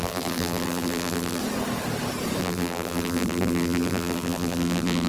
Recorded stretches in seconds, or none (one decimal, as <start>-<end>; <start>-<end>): 1.4-2.4